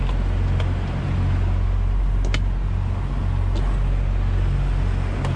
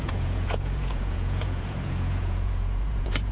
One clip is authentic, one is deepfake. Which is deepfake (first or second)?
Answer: second